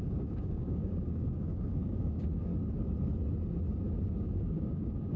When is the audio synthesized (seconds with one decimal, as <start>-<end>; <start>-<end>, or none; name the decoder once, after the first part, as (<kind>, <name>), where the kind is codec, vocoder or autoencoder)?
0.0-2.5 (codec, DAC); 4.2-5.2